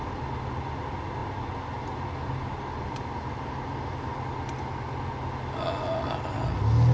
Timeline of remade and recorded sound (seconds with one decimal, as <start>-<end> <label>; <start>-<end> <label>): 0.0-6.9 recorded